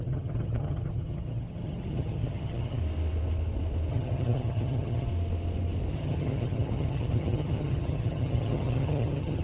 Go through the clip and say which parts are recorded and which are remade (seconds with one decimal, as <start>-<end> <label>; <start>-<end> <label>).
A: 0.0-2.8 remade; 2.8-3.9 recorded; 3.9-5.1 remade; 5.1-5.9 recorded; 5.9-9.4 remade